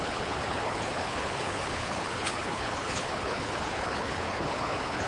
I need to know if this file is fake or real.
fake